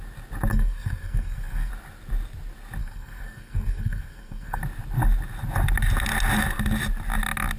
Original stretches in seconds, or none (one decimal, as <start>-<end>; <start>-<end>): 0.0-0.5; 1.7-2.8; 4.6-7.6